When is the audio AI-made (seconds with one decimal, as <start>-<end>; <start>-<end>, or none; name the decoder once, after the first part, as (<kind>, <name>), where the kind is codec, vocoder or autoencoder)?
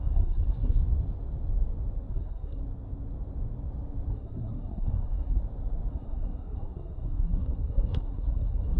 0.0-0.8 (codec, SNAC); 2.1-2.6; 4.1-5.4; 5.9-8.8